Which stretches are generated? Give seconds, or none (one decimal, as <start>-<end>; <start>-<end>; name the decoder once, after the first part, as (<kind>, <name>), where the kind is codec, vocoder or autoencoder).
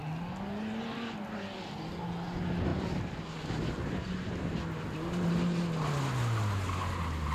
none